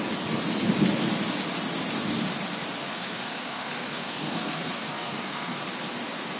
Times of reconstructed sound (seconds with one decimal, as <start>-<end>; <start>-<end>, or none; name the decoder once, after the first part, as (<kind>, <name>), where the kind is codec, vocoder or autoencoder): 2.9-5.6 (codec, SNAC)